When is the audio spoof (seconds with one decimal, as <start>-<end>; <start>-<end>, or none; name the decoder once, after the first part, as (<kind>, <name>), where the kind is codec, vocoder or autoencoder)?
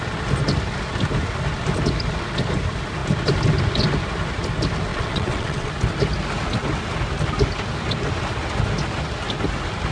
4.9-5.7 (vocoder, WaveNeXt)